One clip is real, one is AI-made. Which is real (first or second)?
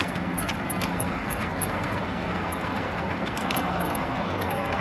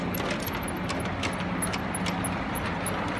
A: second